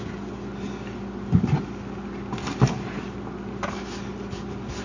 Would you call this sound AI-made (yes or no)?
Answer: no